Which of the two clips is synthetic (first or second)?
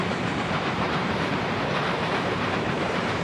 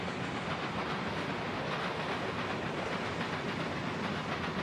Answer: first